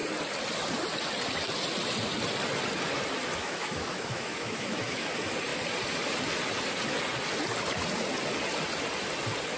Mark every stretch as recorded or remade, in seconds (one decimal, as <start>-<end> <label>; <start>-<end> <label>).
0.0-3.4 recorded; 3.4-5.1 remade; 5.1-9.6 recorded